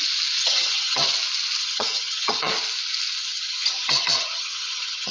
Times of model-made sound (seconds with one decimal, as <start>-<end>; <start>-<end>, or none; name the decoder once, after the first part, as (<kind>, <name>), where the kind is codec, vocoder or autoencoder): 0.4-1.1 (vocoder, HiFi-GAN); 1.6-2.5; 3.2-5.1